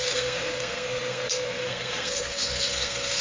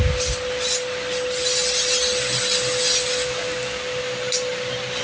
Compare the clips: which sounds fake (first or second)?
first